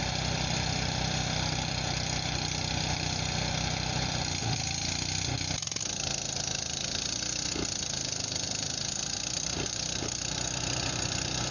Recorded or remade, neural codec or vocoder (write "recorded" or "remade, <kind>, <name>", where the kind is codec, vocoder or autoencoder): recorded